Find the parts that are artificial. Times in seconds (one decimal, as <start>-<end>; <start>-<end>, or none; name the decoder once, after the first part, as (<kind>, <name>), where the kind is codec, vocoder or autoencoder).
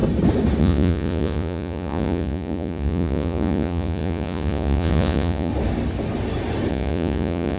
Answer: 0.6-5.5 (vocoder, Vocos); 6.7-7.6